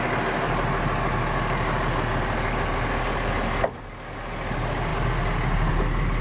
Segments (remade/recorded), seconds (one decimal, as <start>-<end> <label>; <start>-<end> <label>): 0.0-6.2 recorded